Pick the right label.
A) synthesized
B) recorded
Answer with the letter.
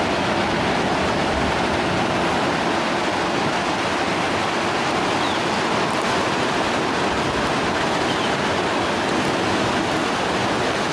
B